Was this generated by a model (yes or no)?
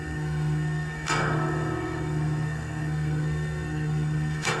yes